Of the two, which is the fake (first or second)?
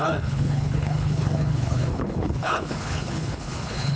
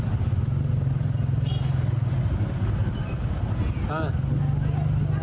first